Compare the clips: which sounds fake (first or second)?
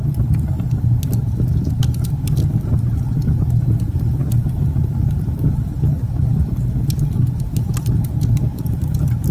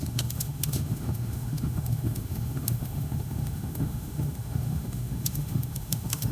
second